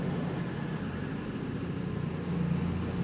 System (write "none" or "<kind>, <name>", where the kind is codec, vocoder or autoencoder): none